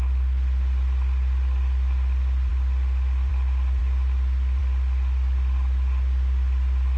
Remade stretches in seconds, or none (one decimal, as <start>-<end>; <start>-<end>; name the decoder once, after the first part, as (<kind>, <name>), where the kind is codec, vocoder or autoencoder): none

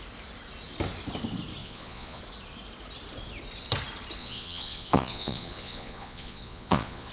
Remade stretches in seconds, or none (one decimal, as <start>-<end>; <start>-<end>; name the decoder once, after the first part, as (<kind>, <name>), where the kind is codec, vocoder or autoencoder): 1.6-2.2 (vocoder, Vocos); 4.2-7.1

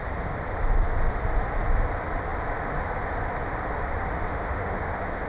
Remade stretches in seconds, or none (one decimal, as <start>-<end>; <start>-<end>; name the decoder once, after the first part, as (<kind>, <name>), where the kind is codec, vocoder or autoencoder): 4.3-5.3 (autoencoder, DAC-VAE)

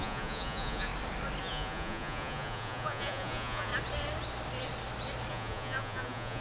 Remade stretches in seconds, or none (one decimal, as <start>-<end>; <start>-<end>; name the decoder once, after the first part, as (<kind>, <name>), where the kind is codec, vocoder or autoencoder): 0.0-0.9 (vocoder, Vocos); 1.4-3.7; 5.3-6.4